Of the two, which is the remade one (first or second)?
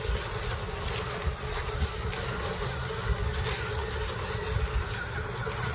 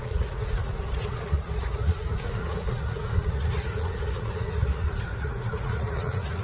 second